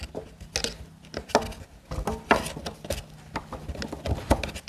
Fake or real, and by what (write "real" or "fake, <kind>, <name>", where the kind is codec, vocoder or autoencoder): real